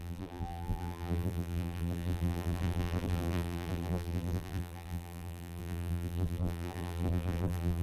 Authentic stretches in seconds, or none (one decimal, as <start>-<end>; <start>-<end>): none